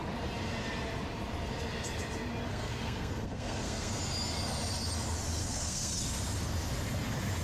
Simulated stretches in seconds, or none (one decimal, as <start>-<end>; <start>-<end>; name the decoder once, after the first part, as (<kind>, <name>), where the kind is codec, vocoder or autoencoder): 2.5-4.0 (codec, SNAC); 5.4-5.9